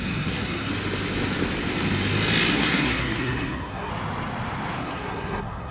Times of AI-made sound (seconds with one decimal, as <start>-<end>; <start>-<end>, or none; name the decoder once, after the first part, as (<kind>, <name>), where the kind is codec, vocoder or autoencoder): 0.0-0.7 (codec, SNAC); 2.5-3.9; 4.8-5.7